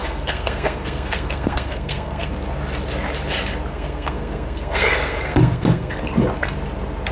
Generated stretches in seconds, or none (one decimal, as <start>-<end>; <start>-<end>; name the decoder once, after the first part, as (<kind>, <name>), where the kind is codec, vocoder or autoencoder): 0.0-2.3 (codec, SNAC); 3.7-6.0